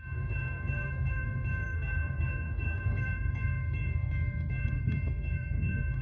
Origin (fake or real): fake